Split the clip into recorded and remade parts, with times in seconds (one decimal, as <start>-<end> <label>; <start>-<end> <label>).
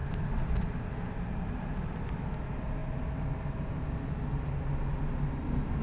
0.0-2.3 remade; 2.3-5.8 recorded